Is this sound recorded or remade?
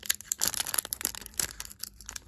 remade